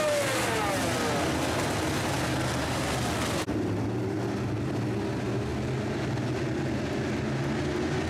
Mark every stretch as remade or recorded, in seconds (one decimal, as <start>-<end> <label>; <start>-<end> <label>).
0.0-8.1 recorded